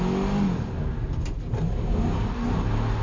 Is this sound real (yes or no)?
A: yes